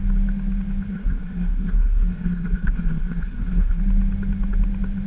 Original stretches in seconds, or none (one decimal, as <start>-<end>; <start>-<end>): 0.0-0.9; 3.8-5.1